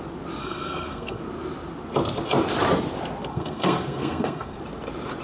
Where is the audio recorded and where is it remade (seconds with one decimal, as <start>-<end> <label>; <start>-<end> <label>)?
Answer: 0.0-0.4 recorded; 0.4-1.2 remade; 1.2-3.3 recorded; 3.3-4.6 remade; 4.6-5.2 recorded